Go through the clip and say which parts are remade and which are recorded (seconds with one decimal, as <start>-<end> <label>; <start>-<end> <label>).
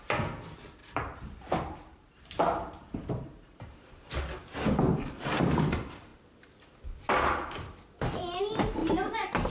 0.0-0.8 recorded; 0.8-4.1 remade; 4.1-8.8 recorded; 8.8-9.5 remade